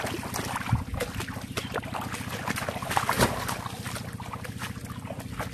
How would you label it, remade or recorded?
recorded